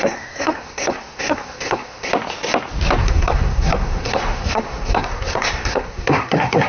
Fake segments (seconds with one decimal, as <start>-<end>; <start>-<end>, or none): 0.0-2.1; 3.0-6.7